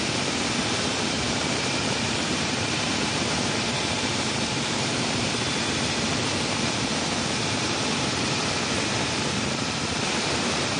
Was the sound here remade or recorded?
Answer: remade